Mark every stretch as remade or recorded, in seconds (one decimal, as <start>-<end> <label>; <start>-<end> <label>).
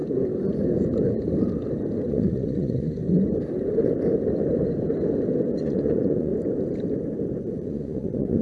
0.0-2.1 recorded; 2.1-3.0 remade; 3.0-5.6 recorded; 5.6-6.3 remade; 6.3-7.4 recorded; 7.4-8.4 remade